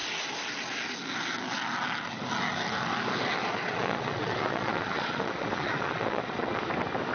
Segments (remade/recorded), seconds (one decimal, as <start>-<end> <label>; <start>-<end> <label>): 0.0-3.4 recorded; 3.4-6.6 remade; 6.6-7.1 recorded